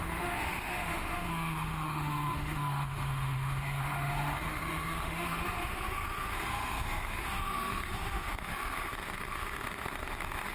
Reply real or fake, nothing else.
fake